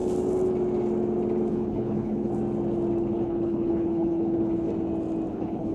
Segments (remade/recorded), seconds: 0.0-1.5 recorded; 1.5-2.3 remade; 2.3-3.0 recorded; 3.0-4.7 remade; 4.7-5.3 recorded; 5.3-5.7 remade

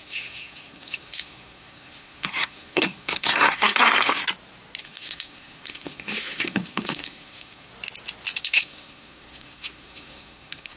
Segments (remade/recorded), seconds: 0.0-4.2 remade; 4.2-4.8 recorded; 4.8-7.7 remade; 7.7-8.4 recorded; 8.4-10.8 remade